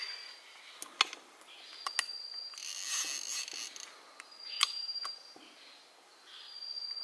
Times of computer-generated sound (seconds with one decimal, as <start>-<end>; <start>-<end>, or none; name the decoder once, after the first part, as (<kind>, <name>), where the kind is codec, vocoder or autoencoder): none

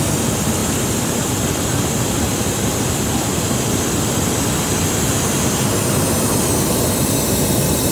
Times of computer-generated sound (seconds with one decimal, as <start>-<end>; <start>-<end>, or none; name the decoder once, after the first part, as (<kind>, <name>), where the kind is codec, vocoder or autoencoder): 0.6-5.3 (vocoder, BigVGAN v2)

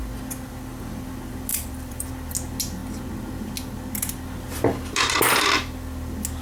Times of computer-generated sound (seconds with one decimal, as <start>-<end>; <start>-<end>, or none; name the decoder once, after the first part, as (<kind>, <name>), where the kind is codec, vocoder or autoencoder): 1.5-2.1 (vocoder, BigVGAN v2)

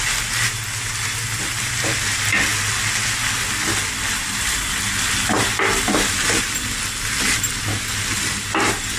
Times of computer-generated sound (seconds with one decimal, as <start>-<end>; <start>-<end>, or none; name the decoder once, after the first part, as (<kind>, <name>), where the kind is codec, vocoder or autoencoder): none

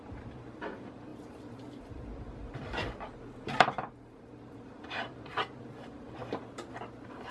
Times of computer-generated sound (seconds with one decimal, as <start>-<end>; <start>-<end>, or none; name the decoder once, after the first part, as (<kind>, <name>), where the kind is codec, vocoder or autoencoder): 0.0-2.8 (vocoder, BigVGAN v2); 3.3-6.2

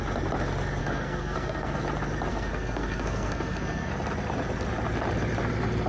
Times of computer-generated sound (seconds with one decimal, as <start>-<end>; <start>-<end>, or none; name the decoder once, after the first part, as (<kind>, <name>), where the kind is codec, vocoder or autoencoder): 0.8-1.8 (codec, SNAC); 2.3-3.9

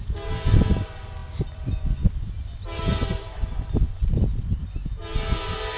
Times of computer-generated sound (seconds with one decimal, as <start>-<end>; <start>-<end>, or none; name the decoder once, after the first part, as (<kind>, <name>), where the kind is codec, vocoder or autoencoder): none

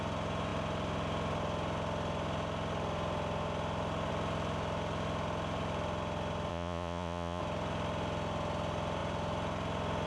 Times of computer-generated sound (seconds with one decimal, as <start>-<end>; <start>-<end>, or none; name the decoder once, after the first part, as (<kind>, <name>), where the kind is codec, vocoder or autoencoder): 6.5-7.4 (vocoder, Vocos)